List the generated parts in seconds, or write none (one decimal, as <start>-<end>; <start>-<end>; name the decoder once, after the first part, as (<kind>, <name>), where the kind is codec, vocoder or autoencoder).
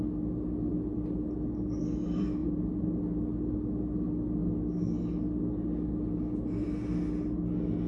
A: 2.4-3.0 (vocoder, BigVGAN v2)